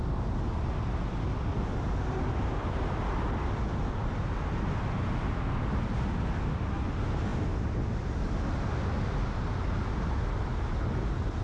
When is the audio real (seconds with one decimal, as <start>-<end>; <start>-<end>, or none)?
0.0-11.4